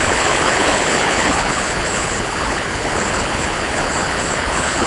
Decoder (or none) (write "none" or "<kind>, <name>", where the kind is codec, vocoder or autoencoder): codec, HILCodec